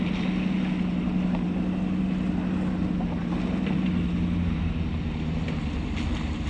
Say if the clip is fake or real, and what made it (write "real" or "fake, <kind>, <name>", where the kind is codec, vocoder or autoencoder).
real